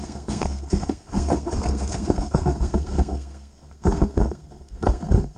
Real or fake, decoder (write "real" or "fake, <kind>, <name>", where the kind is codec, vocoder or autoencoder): fake, codec, SNAC